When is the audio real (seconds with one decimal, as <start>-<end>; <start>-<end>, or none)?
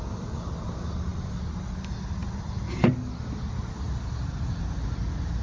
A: 0.0-5.4